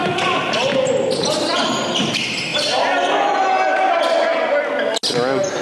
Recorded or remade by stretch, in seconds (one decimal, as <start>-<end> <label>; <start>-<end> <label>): 0.0-5.6 recorded

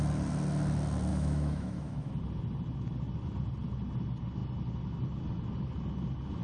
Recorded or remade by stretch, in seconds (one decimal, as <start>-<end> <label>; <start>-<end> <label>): 0.0-1.1 recorded; 1.1-2.1 remade; 2.1-6.4 recorded

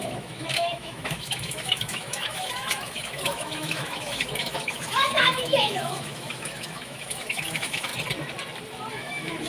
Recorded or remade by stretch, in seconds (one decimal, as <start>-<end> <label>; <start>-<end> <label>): 0.0-7.9 remade; 7.9-8.9 recorded; 8.9-9.5 remade

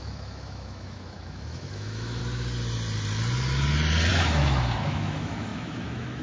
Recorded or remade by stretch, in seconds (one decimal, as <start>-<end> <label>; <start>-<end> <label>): 0.0-2.2 remade; 2.2-4.1 recorded; 4.1-6.2 remade

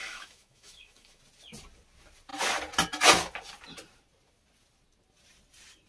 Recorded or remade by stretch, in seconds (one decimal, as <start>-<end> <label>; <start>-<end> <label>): 0.0-1.2 remade; 1.2-5.9 recorded

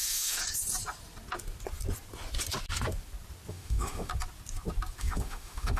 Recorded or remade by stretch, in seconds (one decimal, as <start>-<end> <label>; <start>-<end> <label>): 0.0-0.4 remade; 0.4-3.5 recorded; 3.5-4.1 remade; 4.1-5.0 recorded; 5.0-5.8 remade

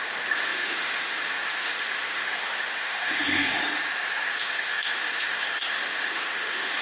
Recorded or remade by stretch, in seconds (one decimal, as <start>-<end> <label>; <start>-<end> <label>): 0.0-3.6 remade; 3.6-4.3 recorded; 4.3-6.8 remade

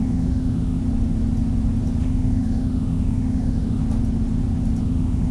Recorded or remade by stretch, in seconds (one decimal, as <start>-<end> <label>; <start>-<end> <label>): 0.0-0.8 remade; 0.8-2.0 recorded; 2.0-3.8 remade; 3.8-4.8 recorded; 4.8-5.3 remade